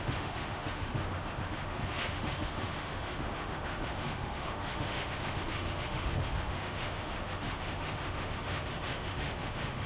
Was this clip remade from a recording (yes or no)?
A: yes